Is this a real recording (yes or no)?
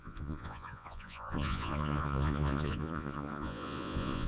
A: no